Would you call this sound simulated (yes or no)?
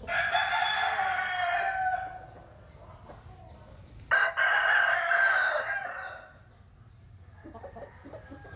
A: no